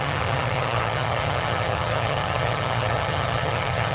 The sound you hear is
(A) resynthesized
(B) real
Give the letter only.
A